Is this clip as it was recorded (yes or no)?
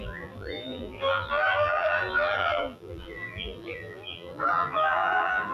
no